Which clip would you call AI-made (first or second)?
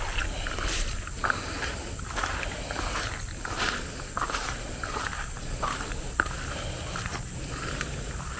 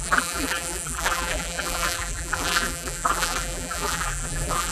second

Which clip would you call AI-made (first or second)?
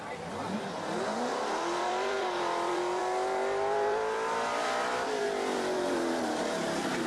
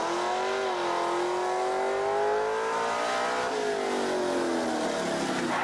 first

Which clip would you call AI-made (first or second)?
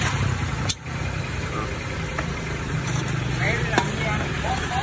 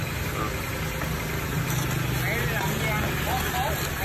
first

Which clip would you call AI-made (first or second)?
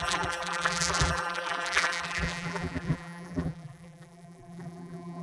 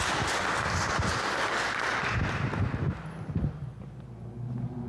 first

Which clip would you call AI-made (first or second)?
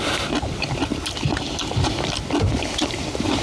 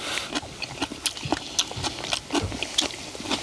first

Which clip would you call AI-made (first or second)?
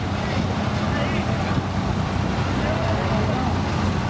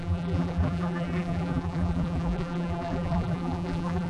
second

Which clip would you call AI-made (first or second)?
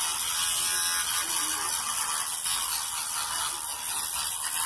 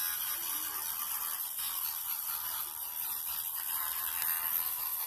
second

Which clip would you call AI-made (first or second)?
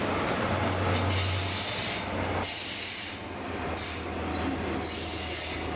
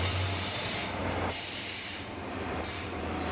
second